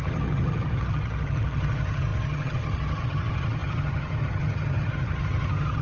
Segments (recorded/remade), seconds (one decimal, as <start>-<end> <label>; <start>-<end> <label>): 0.0-5.8 remade